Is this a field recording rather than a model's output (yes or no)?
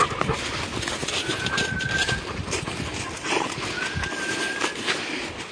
yes